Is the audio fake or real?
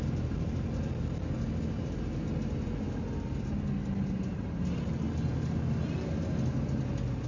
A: real